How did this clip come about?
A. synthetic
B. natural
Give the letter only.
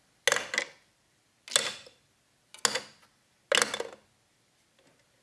B